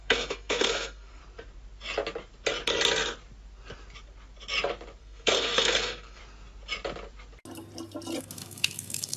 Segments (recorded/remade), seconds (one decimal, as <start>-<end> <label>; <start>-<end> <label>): 0.0-1.2 remade; 1.2-5.0 recorded; 5.0-6.2 remade; 6.2-8.2 recorded; 8.2-9.2 remade